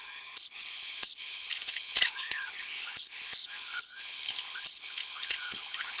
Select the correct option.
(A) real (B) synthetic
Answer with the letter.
B